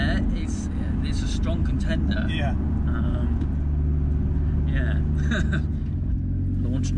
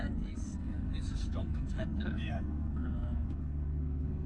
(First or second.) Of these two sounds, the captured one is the first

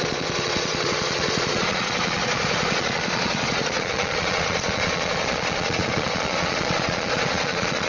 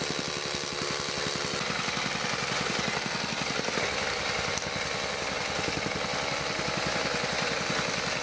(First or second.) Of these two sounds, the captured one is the second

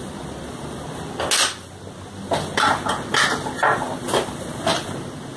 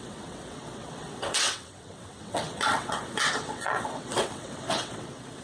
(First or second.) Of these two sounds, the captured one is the first